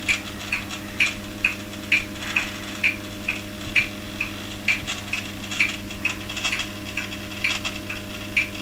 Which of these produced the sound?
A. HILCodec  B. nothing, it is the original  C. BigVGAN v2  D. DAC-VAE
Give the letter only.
B